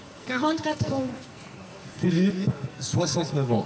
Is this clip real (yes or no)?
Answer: no